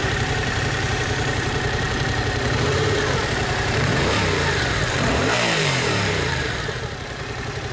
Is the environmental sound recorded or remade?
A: remade